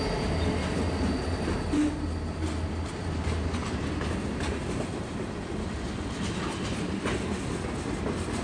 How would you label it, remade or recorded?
recorded